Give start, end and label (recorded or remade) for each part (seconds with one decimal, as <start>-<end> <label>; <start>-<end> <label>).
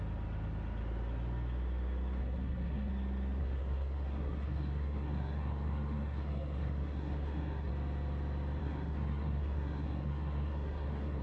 0.0-2.2 recorded; 2.2-2.9 remade; 2.9-3.4 recorded; 3.4-7.7 remade; 7.7-8.6 recorded; 8.6-11.2 remade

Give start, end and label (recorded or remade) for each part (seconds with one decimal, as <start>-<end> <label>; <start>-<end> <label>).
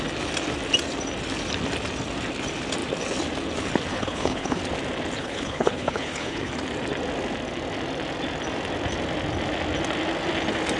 0.0-3.9 recorded; 3.9-4.6 remade; 4.6-5.2 recorded; 5.2-6.5 remade; 6.5-10.8 recorded